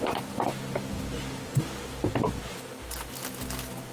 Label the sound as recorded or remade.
recorded